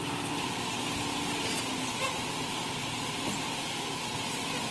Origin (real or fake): real